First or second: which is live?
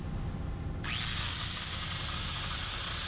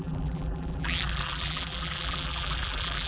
first